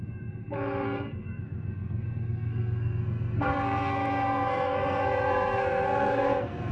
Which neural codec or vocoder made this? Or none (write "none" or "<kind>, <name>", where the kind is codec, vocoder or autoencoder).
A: codec, SNAC